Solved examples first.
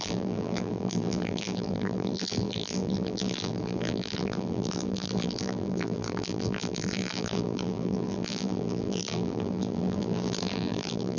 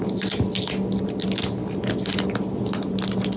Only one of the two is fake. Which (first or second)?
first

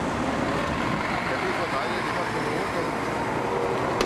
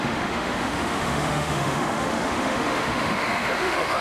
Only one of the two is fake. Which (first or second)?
second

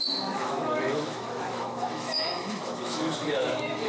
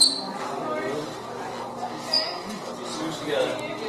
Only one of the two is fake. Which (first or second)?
first